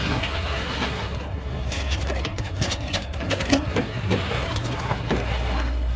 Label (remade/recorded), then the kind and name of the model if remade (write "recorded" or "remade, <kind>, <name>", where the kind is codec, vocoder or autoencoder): remade, codec, SNAC